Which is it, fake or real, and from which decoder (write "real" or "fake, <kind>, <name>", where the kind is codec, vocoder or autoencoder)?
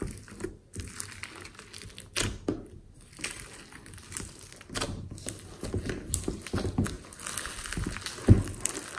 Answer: real